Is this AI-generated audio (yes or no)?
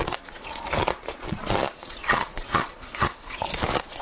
yes